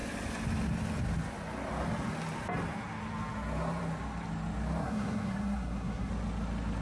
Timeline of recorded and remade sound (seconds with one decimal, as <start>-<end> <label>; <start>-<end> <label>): 0.0-4.8 recorded; 4.8-6.1 remade; 6.1-6.8 recorded